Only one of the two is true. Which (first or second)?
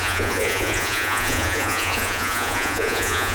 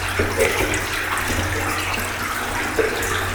second